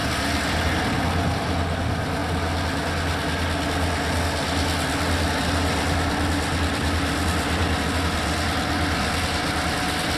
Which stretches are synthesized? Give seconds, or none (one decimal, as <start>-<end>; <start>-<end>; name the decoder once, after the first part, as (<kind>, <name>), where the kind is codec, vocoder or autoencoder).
none